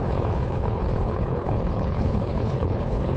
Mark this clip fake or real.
fake